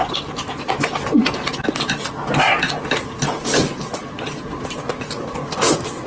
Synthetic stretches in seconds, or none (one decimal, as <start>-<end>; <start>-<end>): none